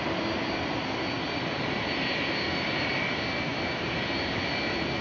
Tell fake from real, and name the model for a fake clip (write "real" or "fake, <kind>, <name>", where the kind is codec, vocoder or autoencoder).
real